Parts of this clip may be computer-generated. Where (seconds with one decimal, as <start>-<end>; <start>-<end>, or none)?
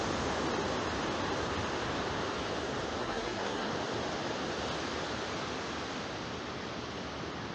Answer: 3.0-3.7